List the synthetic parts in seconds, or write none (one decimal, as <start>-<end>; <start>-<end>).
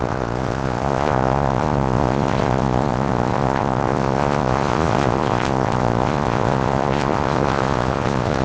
0.0-8.4